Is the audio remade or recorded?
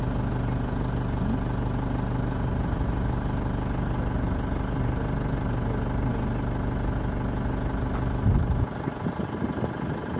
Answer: recorded